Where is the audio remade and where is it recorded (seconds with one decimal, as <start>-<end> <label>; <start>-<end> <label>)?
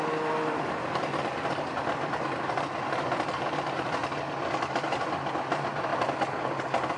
0.0-0.8 remade; 0.8-2.5 recorded; 2.5-4.0 remade; 4.0-4.7 recorded; 4.7-7.0 remade